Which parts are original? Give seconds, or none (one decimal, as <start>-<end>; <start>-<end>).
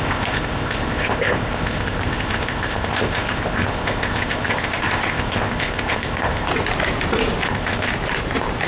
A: 6.5-7.5; 7.9-8.7